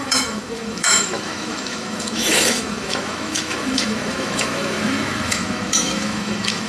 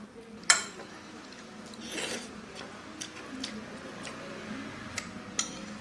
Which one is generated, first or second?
first